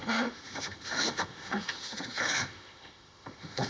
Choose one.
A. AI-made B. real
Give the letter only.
A